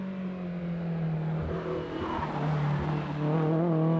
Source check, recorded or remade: recorded